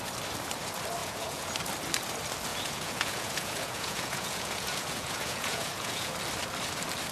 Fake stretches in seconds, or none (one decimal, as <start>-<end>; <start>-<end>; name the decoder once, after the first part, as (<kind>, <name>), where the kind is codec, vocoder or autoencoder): 1.0-1.5 (vocoder, Vocos); 2.5-6.1